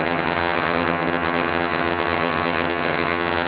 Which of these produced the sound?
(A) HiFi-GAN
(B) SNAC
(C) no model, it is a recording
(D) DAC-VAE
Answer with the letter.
A